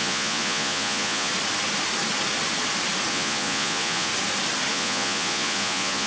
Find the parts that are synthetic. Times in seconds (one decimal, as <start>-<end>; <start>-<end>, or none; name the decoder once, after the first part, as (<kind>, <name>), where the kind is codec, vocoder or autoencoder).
0.0-1.3 (vocoder, Vocos); 3.1-4.1; 4.7-6.1